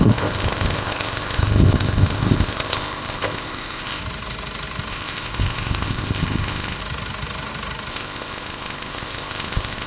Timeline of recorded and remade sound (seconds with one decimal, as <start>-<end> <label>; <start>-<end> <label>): 0.0-4.0 remade; 4.0-4.9 recorded; 4.9-6.8 remade; 6.8-7.9 recorded; 7.9-9.9 remade